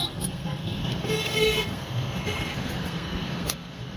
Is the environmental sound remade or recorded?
remade